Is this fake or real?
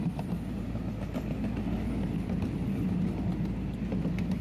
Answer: real